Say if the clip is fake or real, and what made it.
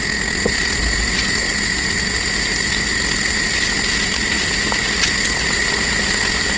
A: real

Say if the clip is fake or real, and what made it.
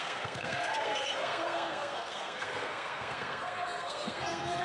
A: fake, codec, SNAC